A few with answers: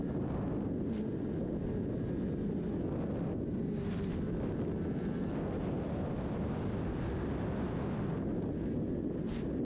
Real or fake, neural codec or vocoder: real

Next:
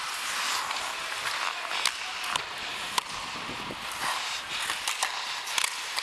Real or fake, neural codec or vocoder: real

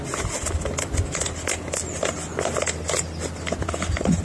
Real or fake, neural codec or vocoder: real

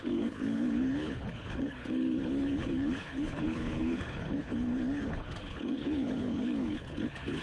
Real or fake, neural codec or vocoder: fake, codec, HILCodec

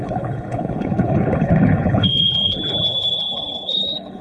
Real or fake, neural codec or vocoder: fake, codec, HILCodec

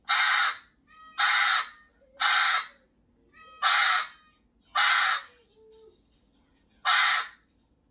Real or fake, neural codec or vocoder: real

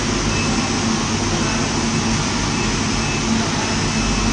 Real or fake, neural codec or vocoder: real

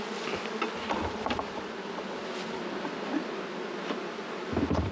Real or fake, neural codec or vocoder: real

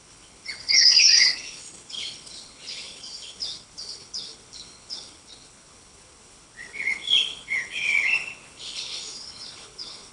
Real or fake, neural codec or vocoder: fake, codec, HILCodec